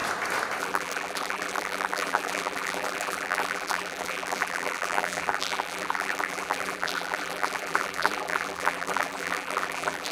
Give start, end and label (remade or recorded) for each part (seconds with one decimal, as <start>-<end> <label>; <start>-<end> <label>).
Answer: 0.0-0.6 recorded; 0.6-10.1 remade